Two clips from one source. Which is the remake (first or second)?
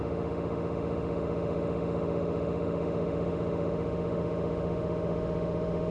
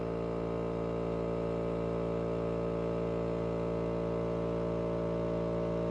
first